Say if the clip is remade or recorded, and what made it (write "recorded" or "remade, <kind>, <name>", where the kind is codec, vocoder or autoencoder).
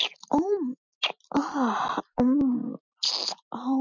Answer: recorded